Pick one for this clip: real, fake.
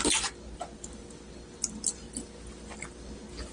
real